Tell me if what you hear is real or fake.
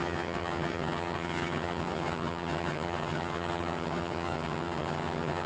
fake